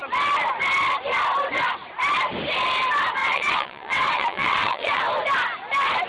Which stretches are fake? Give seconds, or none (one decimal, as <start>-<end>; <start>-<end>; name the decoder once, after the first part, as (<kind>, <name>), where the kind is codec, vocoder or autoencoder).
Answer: 3.2-5.0 (vocoder, WaveNeXt)